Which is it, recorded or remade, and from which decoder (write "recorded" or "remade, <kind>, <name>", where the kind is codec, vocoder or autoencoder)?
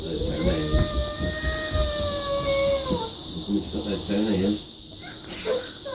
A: recorded